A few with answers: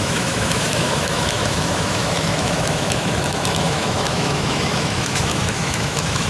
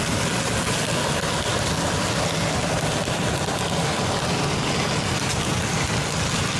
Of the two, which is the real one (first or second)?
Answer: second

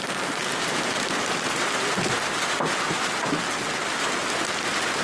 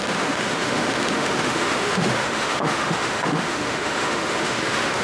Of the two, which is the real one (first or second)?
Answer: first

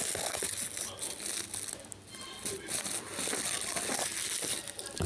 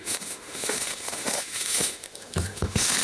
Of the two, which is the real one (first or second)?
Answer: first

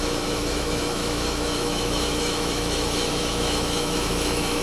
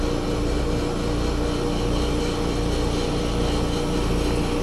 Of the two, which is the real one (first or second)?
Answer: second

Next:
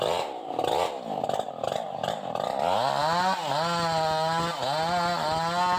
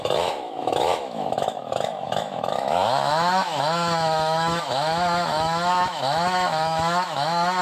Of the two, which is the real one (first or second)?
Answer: first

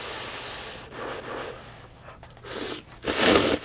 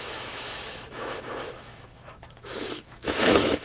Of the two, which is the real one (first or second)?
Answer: first